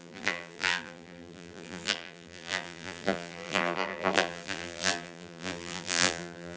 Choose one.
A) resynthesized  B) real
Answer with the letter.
A